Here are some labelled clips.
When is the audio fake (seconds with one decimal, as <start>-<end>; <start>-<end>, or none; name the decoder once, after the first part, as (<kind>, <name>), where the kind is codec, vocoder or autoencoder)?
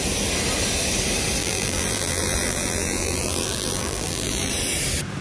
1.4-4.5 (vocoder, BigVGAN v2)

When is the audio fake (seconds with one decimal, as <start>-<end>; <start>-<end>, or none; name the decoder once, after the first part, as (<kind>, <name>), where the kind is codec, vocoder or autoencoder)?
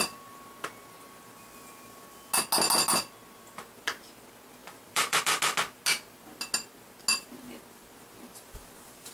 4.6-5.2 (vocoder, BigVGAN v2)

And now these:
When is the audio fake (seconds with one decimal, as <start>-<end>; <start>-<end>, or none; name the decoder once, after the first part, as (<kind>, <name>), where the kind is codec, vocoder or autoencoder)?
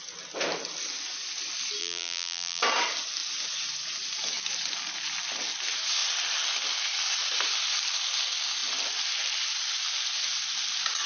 1.8-2.6 (vocoder, BigVGAN v2)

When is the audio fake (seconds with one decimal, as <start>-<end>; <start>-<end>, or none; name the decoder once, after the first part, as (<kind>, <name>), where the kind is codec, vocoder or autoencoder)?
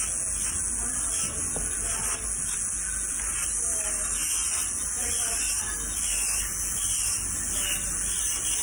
none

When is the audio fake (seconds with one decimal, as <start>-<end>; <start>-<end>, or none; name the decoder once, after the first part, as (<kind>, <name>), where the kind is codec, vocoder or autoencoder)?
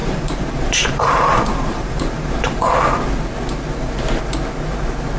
0.0-2.7 (vocoder, BigVGAN v2)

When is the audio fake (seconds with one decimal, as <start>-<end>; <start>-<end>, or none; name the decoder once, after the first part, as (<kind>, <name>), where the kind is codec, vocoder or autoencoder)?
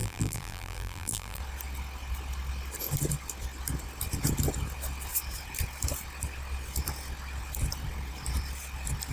0.0-1.4 (vocoder, BigVGAN v2)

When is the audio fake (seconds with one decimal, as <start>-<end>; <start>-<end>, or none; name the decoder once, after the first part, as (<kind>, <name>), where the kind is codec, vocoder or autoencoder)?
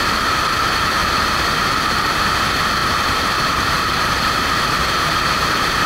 1.0-1.7 (vocoder, BigVGAN v2); 2.8-5.9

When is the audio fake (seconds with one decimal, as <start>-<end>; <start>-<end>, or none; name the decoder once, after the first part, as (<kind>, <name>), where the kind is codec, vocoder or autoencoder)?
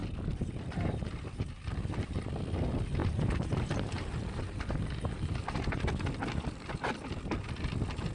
0.0-2.3 (vocoder, BigVGAN v2); 3.0-7.1